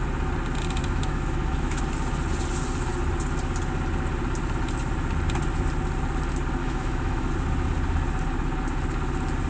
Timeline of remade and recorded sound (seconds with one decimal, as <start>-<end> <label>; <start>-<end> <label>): 0.0-0.8 recorded; 0.8-1.8 remade; 1.8-6.6 recorded; 6.6-7.3 remade; 7.3-9.5 recorded